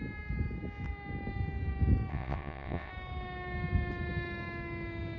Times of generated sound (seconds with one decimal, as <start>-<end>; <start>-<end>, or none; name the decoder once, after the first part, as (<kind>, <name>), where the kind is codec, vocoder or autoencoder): 2.1-2.9 (vocoder, WaveNeXt)